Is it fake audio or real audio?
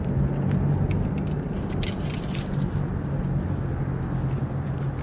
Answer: real